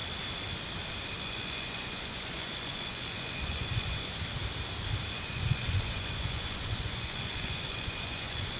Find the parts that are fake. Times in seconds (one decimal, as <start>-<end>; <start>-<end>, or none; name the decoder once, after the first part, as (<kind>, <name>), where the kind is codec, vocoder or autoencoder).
1.2-4.1 (vocoder, Vocos); 5.1-8.6